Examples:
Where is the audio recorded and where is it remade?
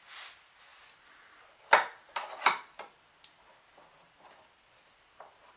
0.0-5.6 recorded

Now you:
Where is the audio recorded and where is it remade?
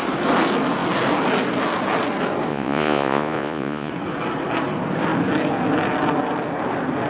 0.0-2.5 recorded; 2.5-3.9 remade; 3.9-7.1 recorded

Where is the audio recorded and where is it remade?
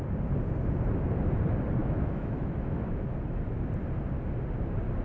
0.0-1.8 recorded; 1.8-3.0 remade; 3.0-5.0 recorded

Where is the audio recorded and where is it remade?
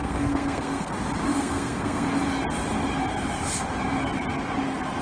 0.0-0.9 remade; 0.9-1.3 recorded; 1.3-2.1 remade; 2.1-5.0 recorded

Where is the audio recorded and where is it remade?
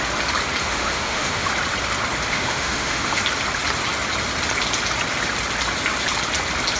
0.0-0.6 recorded; 0.6-1.5 remade; 1.5-2.3 recorded; 2.3-3.2 remade; 3.2-6.8 recorded